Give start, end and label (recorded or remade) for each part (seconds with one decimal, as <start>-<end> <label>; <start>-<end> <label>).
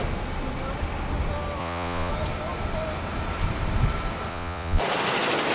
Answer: 0.0-1.6 recorded; 1.6-2.1 remade; 2.1-4.3 recorded; 4.3-4.8 remade; 4.8-5.5 recorded